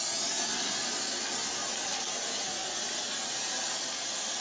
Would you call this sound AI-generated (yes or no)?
no